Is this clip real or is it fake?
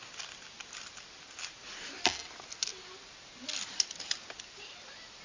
real